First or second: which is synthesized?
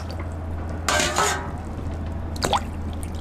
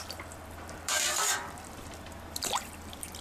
second